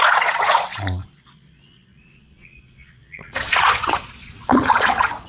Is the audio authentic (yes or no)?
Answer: no